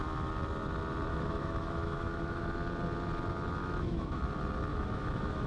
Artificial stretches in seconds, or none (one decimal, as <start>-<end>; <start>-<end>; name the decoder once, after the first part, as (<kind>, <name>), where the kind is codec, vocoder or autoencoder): 1.1-2.5 (autoencoder, DAC-VAE); 3.6-4.2; 4.7-5.5